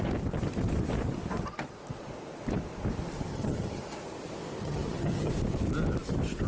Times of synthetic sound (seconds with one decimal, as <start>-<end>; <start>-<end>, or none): 3.3-3.8; 4.6-5.3

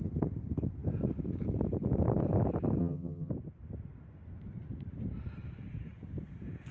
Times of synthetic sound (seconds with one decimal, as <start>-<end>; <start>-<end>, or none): 2.8-3.3